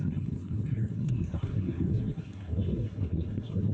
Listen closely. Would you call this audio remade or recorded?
remade